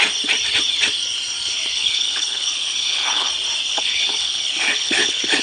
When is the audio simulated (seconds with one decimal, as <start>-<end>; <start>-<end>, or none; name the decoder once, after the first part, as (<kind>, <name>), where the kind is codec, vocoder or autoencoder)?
1.7-3.3 (codec, HILCodec); 3.7-5.4